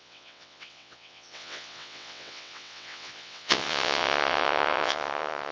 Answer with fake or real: fake